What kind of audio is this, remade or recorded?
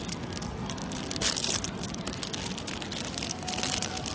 recorded